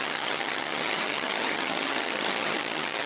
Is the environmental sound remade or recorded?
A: remade